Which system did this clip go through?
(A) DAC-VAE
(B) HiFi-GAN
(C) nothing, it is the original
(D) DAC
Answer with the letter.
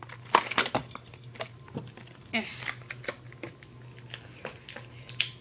C